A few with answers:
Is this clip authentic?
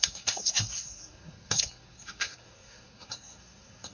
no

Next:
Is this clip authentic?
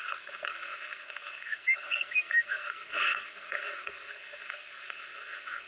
no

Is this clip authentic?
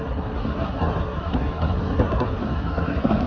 no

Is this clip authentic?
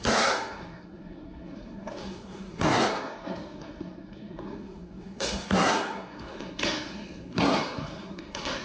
no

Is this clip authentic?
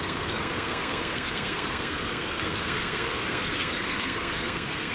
no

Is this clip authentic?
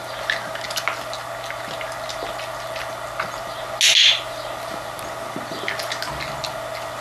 yes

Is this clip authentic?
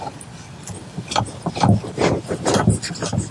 yes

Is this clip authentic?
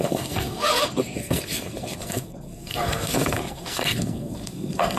no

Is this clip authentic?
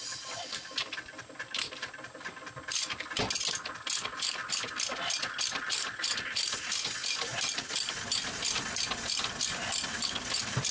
yes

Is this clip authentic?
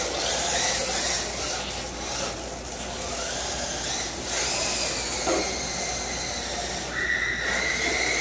yes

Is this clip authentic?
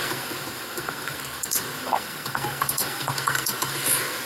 no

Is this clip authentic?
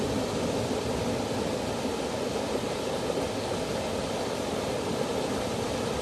yes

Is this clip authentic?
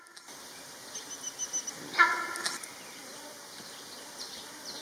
yes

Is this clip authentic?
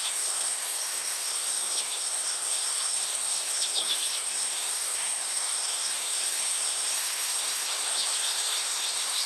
no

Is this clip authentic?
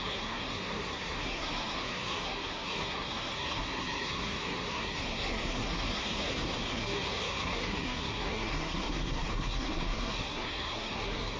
no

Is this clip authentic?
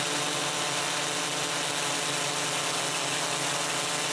yes